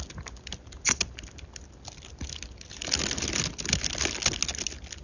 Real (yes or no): yes